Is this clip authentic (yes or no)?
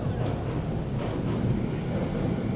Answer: yes